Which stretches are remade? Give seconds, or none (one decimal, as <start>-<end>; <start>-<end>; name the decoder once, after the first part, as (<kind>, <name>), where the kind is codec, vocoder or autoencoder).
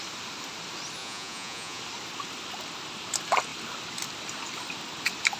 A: 1.0-1.8 (vocoder, Vocos)